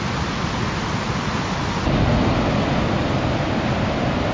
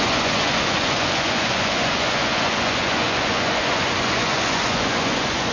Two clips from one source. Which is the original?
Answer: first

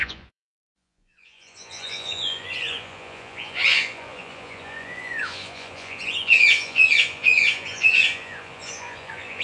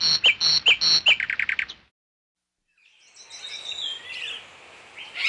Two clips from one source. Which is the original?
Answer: second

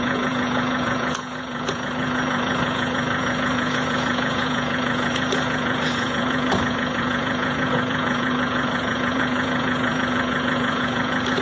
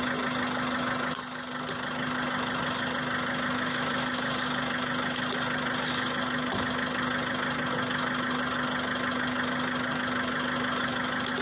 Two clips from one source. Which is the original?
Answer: second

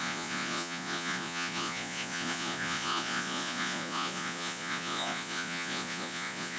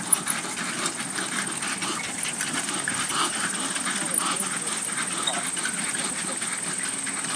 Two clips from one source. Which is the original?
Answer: second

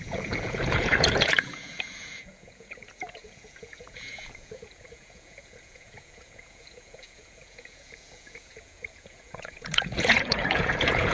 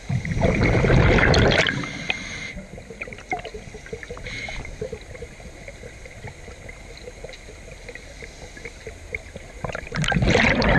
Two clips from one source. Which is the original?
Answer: second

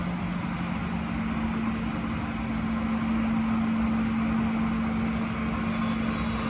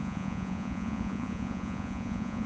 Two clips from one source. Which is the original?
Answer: first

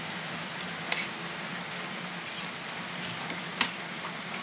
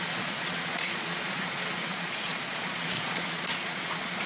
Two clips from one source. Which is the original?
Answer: first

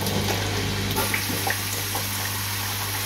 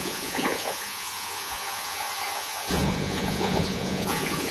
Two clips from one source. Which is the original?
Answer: first